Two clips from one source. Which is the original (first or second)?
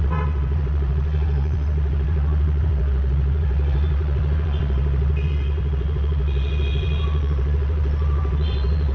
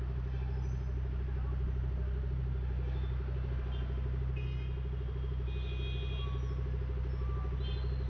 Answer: second